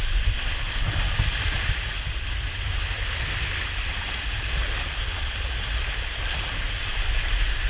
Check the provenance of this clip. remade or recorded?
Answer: recorded